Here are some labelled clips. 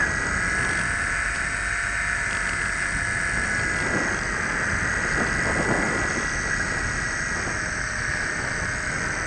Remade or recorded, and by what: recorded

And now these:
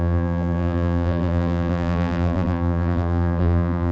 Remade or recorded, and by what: remade, vocoder, BigVGAN v2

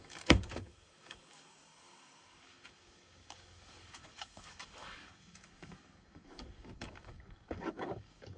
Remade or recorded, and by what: remade, codec, DAC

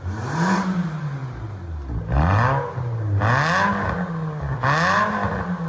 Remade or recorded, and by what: recorded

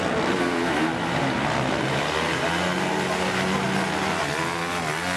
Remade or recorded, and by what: recorded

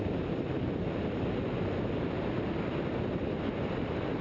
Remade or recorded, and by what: recorded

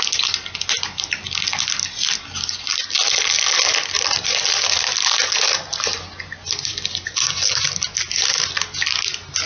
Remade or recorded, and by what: recorded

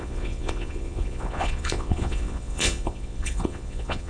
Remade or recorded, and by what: remade, vocoder, Vocos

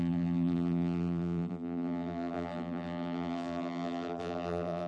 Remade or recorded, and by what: remade, vocoder, BigVGAN v2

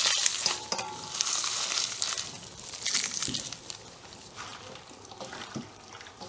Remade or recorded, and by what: recorded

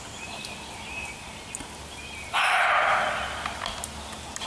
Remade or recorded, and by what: recorded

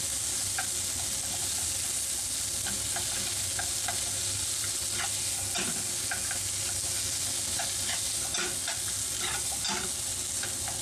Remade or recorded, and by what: recorded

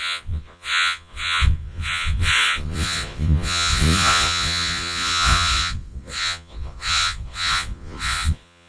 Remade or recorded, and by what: remade, vocoder, Vocos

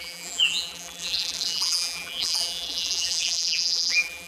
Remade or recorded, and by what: remade, vocoder, BigVGAN v2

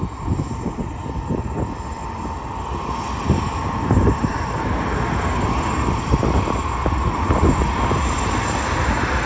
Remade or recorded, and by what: recorded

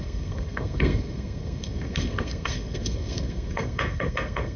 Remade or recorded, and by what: remade, codec, SNAC